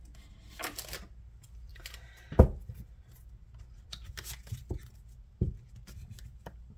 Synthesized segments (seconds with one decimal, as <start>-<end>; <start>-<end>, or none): none